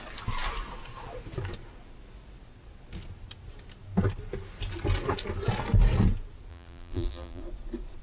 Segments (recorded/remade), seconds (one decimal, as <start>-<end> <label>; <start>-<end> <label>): 0.0-6.5 recorded; 6.5-7.4 remade; 7.4-8.0 recorded